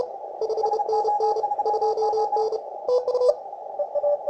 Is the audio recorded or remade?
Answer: recorded